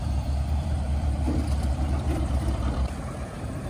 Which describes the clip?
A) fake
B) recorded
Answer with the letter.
A